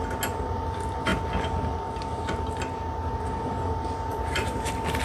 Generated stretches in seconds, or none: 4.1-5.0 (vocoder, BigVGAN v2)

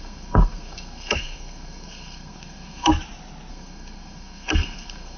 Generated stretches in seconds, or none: 0.0-2.9 (codec, SNAC); 3.5-5.2

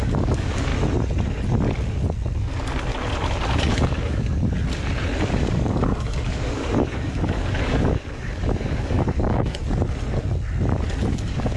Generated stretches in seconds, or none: 0.0-0.7 (codec, DAC); 3.7-4.4; 5.3-9.6; 11.1-11.6

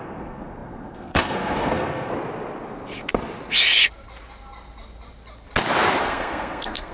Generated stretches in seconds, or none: 0.0-2.1 (codec, SNAC); 6.0-6.9